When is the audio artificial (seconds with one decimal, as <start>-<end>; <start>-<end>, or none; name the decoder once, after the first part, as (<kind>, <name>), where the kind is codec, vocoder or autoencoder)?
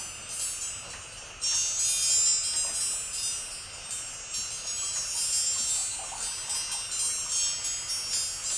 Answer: none